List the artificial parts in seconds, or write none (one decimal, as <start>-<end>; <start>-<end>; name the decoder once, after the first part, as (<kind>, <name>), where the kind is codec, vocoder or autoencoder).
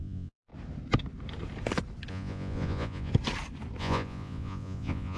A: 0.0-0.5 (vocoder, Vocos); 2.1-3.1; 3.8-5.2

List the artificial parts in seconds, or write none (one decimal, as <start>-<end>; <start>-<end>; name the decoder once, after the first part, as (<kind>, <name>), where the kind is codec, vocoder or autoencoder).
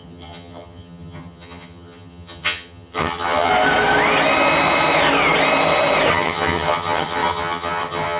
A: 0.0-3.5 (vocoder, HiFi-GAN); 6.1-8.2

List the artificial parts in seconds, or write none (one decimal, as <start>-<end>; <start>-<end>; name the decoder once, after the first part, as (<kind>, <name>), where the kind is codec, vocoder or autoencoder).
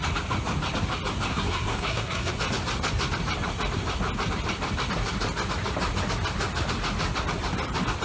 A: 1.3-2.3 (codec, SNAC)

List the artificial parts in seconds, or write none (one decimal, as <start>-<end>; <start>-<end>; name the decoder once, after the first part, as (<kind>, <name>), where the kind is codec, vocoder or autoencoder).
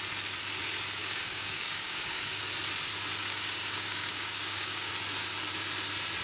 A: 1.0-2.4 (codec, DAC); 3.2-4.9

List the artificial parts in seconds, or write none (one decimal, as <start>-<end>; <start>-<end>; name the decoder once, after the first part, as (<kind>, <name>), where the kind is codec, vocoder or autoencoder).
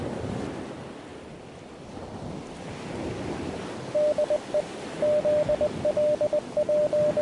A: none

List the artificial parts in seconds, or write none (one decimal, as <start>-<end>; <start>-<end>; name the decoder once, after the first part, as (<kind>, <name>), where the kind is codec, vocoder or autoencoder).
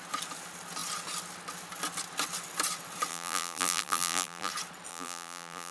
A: 3.1-4.5 (vocoder, BigVGAN v2); 4.9-5.7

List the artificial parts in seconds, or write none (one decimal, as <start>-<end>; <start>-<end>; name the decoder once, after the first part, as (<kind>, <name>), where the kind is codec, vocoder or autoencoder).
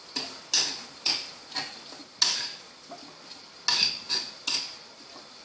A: none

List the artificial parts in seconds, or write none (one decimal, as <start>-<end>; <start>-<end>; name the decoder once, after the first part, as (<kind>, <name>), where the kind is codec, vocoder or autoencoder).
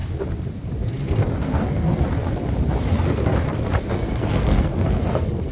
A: 1.3-1.9 (codec, SNAC); 2.9-3.3; 3.9-5.5